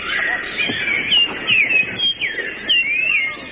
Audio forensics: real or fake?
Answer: real